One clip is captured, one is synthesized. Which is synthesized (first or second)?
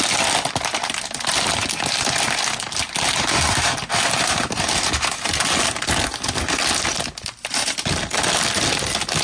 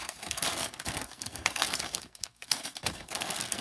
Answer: second